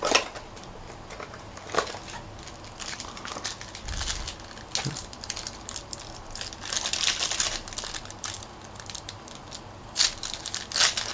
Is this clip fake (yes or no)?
no